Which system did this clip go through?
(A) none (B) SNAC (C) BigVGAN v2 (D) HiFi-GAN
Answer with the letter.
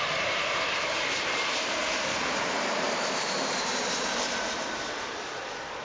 C